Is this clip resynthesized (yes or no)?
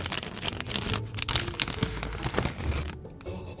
no